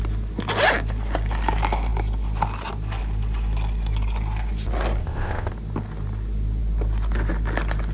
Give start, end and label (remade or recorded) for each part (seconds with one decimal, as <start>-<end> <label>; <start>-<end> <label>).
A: 0.0-5.0 recorded; 5.0-5.5 remade; 5.5-7.9 recorded